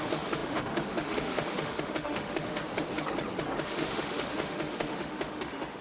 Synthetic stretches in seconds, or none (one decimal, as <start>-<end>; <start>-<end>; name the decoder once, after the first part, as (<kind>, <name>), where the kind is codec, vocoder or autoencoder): 0.0-2.6 (autoencoder, DAC-VAE); 3.6-5.8